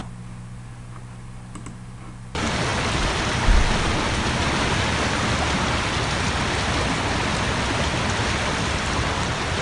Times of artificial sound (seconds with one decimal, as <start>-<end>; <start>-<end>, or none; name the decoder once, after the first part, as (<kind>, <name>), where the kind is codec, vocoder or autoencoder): none